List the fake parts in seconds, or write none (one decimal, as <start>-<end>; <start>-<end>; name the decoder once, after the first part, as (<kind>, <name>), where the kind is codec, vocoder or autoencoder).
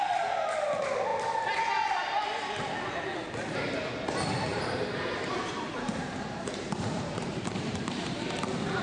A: 4.5-8.4 (vocoder, BigVGAN v2)